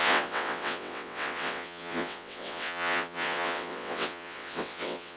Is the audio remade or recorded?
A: remade